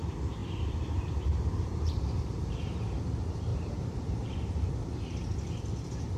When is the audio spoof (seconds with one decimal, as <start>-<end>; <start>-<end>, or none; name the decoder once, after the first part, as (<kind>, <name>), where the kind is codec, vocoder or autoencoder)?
0.4-2.9 (vocoder, BigVGAN v2); 3.5-4.7